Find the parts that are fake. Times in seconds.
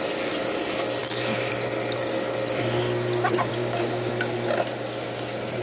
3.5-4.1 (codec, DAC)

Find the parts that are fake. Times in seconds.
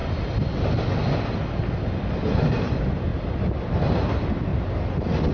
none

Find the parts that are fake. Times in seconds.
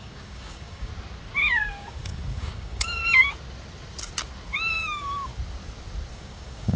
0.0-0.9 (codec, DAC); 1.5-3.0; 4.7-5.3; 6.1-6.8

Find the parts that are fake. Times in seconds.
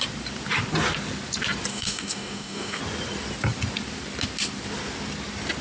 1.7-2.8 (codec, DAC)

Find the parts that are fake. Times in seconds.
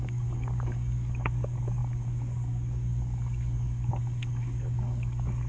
0.0-5.5 (codec, DAC)